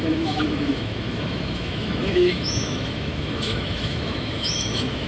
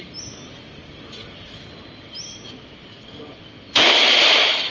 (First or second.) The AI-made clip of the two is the first